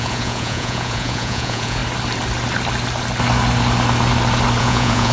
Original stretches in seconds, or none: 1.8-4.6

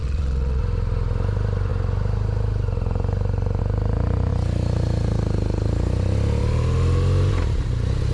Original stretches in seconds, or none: 0.6-8.1

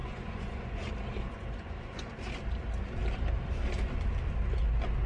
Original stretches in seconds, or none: 0.8-1.3; 2.1-5.1

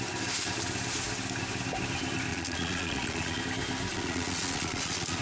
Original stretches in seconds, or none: 0.0-2.3; 3.4-3.9

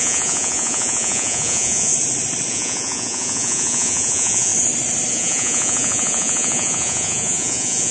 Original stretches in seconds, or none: 1.9-2.5; 4.5-5.1

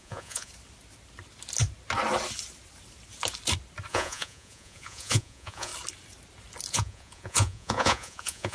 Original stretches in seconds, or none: 0.5-3.9; 5.7-6.7